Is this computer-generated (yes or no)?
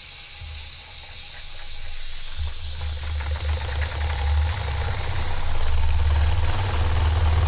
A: no